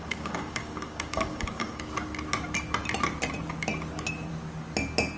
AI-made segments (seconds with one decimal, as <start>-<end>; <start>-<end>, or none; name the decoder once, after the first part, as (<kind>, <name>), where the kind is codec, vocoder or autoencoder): 0.0-1.8 (codec, DAC)